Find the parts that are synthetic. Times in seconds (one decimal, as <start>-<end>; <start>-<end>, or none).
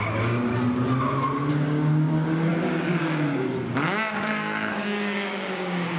0.0-0.5; 1.5-6.0